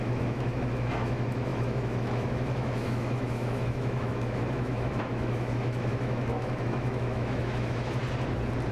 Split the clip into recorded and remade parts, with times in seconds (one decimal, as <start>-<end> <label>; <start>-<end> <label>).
0.0-8.0 remade; 8.0-8.7 recorded